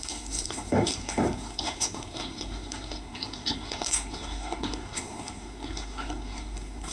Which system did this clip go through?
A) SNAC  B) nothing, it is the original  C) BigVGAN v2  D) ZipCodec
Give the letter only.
A